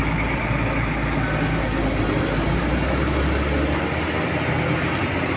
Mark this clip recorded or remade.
recorded